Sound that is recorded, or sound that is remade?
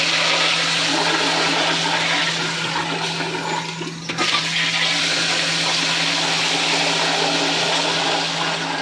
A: recorded